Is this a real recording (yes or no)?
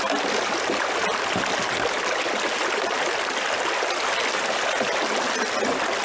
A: yes